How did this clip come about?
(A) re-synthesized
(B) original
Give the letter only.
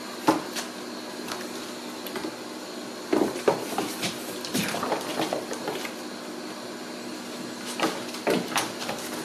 B